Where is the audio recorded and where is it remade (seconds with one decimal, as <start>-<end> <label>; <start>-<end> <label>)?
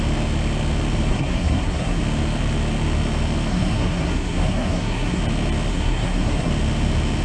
0.0-1.1 recorded; 1.1-2.0 remade; 2.0-3.5 recorded; 3.5-5.2 remade; 5.2-5.7 recorded; 5.7-6.5 remade; 6.5-7.2 recorded